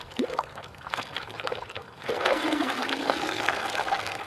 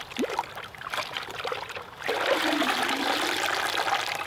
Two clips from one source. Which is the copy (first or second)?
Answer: first